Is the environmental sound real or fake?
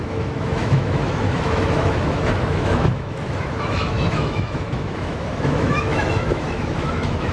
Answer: fake